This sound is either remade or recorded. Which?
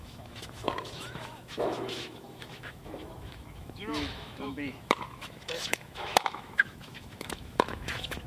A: remade